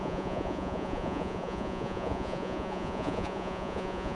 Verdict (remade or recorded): remade